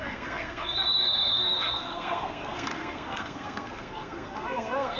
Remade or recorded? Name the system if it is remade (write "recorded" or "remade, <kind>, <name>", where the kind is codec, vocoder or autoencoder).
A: remade, codec, SNAC